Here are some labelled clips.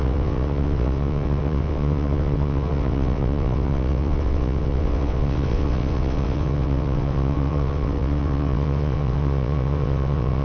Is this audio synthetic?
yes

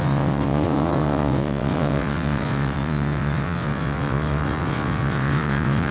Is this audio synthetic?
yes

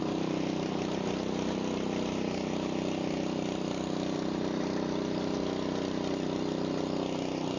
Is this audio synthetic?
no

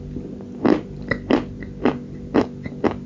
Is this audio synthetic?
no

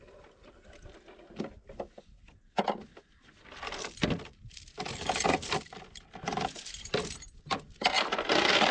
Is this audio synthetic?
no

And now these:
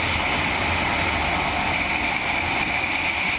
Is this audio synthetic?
no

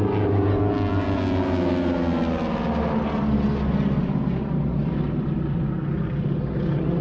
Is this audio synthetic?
no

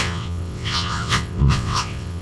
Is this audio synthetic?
yes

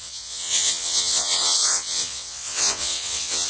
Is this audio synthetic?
yes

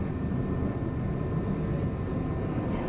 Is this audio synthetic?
no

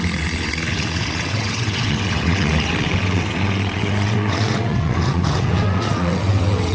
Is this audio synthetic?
yes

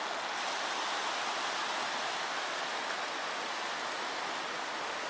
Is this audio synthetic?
no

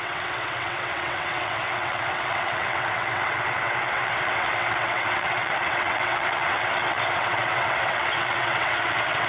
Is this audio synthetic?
yes